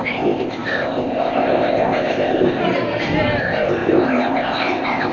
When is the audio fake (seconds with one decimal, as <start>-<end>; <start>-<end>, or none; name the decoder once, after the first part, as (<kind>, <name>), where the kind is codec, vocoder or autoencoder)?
0.0-2.6 (codec, ZipCodec); 3.4-5.1